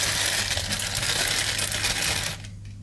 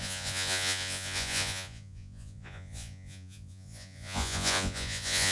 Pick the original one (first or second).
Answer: first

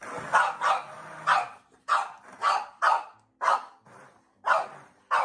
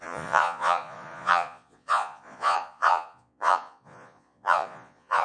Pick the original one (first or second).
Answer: first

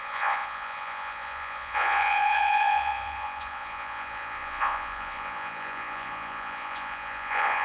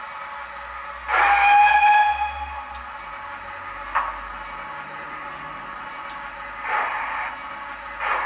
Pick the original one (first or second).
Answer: second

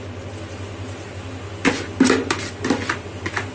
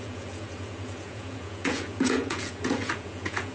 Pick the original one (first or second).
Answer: first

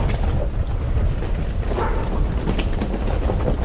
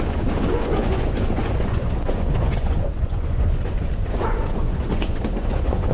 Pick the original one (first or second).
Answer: first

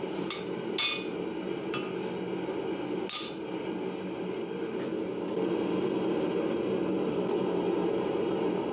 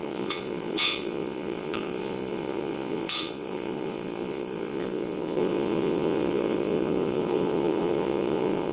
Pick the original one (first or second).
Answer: first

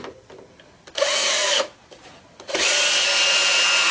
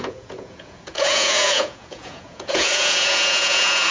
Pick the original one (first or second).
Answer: first